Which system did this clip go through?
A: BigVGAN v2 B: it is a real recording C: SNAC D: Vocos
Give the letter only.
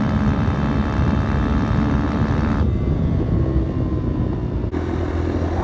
B